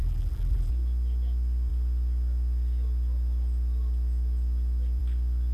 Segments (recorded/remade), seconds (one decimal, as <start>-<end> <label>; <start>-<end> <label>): 0.0-0.7 remade; 0.7-5.5 recorded